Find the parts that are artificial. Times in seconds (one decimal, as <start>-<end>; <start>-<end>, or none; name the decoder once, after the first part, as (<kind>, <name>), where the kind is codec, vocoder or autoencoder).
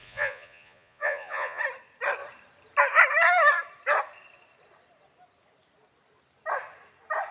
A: 0.0-1.6 (vocoder, Vocos)